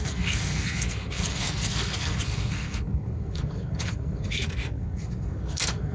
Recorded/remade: remade